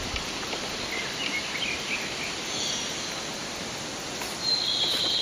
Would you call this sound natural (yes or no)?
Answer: yes